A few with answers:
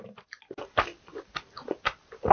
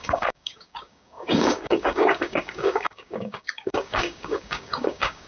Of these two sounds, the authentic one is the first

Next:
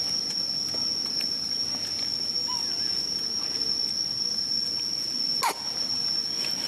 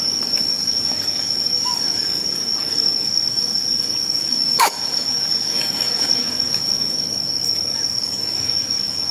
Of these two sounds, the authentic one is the first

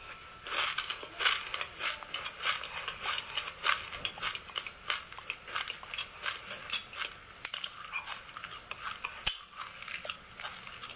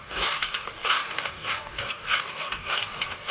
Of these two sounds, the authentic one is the first